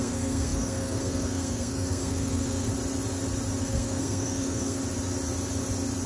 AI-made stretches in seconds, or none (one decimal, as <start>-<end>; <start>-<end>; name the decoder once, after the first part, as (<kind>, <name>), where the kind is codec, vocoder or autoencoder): 0.0-2.7 (codec, SNAC); 3.6-4.8